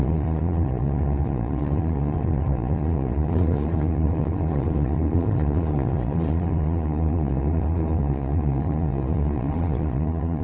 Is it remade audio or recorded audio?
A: remade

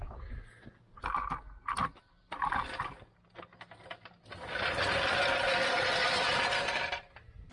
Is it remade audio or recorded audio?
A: recorded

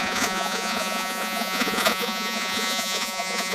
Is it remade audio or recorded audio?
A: remade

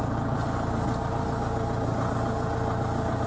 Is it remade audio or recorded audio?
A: recorded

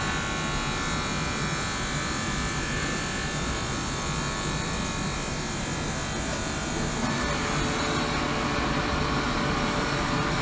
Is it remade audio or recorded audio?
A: recorded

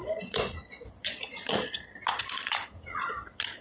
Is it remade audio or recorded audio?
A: remade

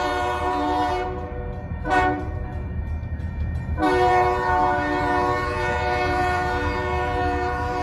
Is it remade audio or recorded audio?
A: remade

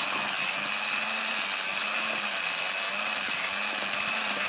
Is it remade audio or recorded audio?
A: recorded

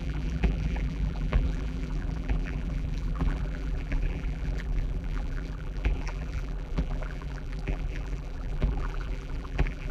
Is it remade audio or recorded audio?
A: remade